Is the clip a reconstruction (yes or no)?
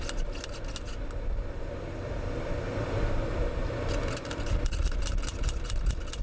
no